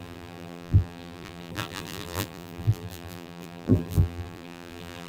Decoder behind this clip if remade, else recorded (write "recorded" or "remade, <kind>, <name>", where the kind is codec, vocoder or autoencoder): remade, vocoder, BigVGAN v2